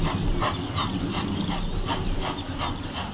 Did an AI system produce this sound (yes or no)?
no